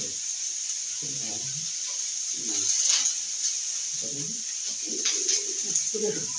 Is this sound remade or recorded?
recorded